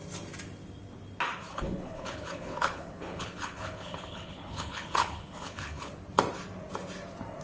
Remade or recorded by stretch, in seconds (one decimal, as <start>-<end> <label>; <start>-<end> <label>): 0.0-1.5 recorded; 1.5-5.9 remade; 5.9-7.4 recorded